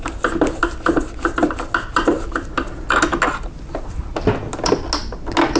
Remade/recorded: recorded